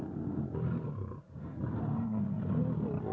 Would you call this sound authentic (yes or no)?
yes